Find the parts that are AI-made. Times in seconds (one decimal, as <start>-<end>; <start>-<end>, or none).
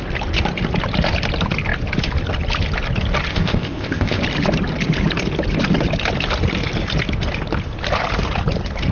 3.3-4.2